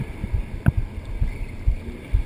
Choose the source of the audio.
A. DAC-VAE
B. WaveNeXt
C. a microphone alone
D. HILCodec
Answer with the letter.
C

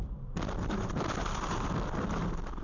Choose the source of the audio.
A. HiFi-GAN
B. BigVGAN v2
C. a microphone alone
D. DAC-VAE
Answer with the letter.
B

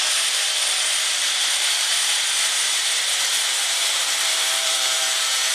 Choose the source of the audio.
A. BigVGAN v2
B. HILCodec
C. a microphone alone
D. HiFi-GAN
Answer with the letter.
A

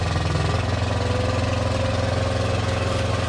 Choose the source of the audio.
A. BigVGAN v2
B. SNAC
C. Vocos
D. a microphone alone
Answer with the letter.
D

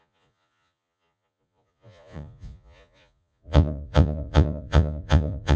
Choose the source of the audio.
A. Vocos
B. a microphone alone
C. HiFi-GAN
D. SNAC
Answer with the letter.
A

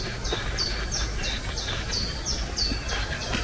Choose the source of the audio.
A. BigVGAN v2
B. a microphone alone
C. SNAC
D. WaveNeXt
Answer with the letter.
B